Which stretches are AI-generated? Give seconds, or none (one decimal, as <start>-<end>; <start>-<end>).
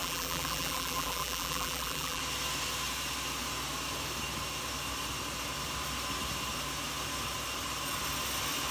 0.0-2.2